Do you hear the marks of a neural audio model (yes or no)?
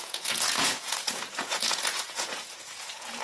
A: yes